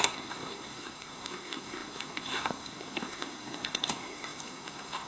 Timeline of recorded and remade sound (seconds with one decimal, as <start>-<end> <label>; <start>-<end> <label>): 0.0-5.1 remade